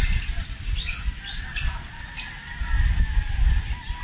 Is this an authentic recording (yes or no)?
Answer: yes